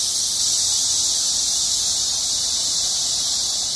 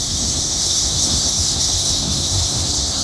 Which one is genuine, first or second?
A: first